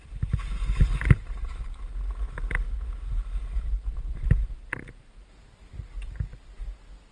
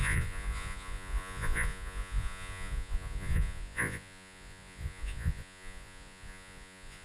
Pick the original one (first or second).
first